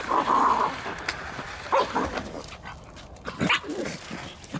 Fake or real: real